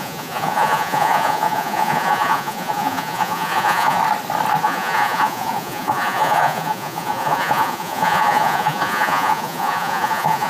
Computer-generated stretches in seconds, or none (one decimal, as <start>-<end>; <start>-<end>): 0.0-4.0; 4.6-10.5